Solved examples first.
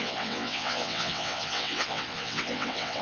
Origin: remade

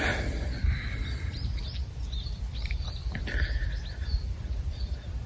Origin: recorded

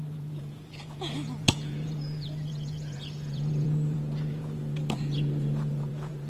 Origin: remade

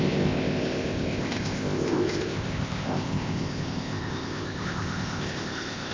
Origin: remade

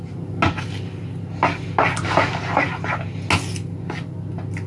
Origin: recorded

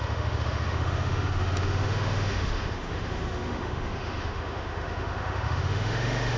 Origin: remade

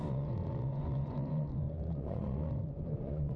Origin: remade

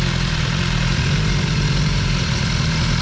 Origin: remade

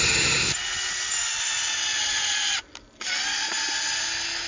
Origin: recorded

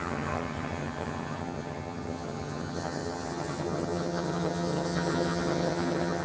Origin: remade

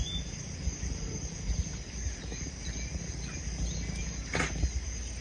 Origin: recorded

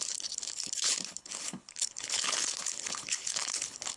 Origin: remade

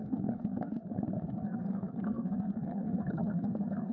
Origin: remade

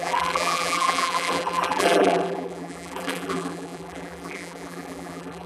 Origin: remade